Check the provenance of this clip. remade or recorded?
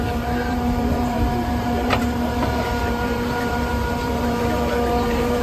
remade